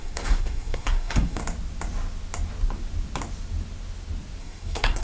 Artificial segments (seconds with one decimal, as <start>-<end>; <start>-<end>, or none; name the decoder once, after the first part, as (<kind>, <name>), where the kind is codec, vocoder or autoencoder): 0.0-1.4 (codec, SNAC); 4.4-5.0